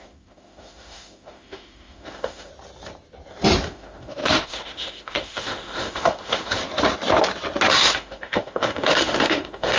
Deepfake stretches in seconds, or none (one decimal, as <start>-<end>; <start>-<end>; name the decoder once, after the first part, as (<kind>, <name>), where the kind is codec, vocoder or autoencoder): 0.0-2.5 (autoencoder, DAC-VAE); 3.7-6.6; 7.7-9.8